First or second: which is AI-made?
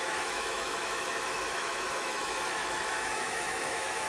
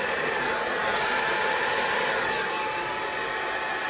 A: first